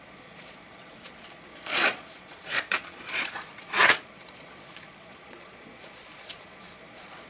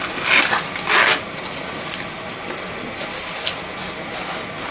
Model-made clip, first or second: first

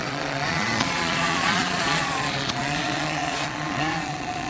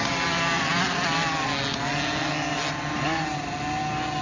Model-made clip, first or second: first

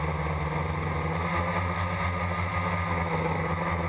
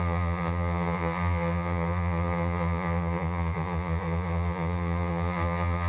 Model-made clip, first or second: second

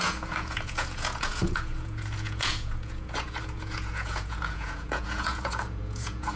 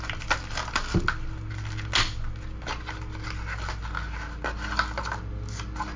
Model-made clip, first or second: first